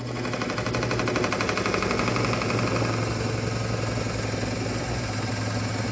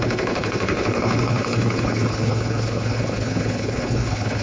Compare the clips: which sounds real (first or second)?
first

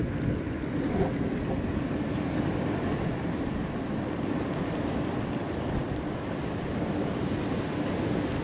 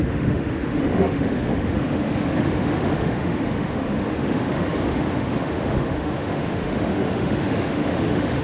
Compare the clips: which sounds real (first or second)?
first